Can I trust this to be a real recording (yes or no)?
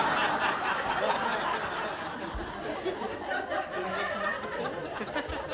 yes